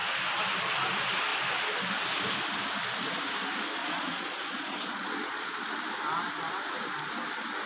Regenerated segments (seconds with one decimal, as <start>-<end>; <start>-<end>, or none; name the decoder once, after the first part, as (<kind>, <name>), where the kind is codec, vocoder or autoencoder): 3.8-5.6 (vocoder, Vocos)